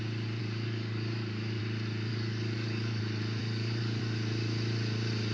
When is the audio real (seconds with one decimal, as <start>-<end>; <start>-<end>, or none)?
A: 0.0-0.4; 1.6-2.1; 3.0-3.4; 4.0-5.3